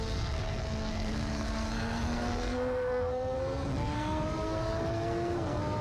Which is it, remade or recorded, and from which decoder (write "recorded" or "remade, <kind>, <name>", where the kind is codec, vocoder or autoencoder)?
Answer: remade, codec, SNAC